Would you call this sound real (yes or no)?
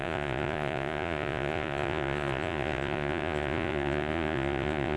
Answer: no